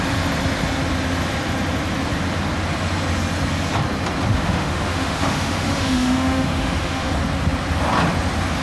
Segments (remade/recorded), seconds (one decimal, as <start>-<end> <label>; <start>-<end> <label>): 0.0-4.3 recorded; 4.3-7.1 remade; 7.1-8.6 recorded